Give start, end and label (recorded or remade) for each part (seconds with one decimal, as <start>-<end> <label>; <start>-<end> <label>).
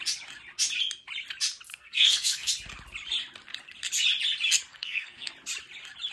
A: 0.0-1.7 recorded; 1.7-2.5 remade; 2.5-4.7 recorded; 4.7-5.3 remade; 5.3-6.1 recorded